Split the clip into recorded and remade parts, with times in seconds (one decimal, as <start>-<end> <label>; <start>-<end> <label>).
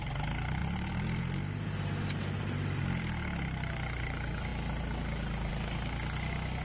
0.0-0.6 recorded; 0.6-2.8 remade; 2.8-6.6 recorded